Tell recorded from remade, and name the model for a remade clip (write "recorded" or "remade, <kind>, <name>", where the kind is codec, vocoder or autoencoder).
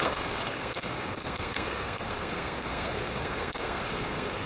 remade, codec, SNAC